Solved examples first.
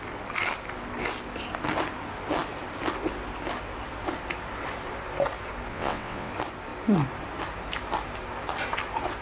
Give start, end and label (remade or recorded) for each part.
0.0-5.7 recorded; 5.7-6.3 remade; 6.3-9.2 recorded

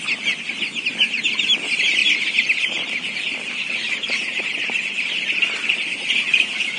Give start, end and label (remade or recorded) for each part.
0.0-2.0 recorded; 2.0-6.1 remade; 6.1-6.8 recorded

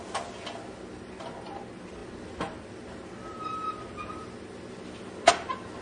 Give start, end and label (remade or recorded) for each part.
0.0-5.8 recorded

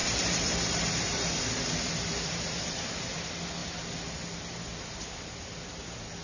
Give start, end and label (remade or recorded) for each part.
0.0-1.4 remade; 1.4-6.2 recorded